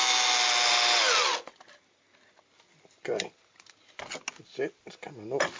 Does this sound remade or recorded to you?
recorded